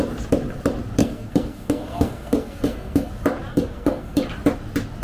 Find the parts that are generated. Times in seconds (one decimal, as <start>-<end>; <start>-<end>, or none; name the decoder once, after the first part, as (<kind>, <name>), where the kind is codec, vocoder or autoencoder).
1.0-3.1 (codec, SNAC); 3.5-4.2